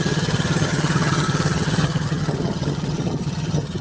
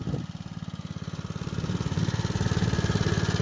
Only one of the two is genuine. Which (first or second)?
second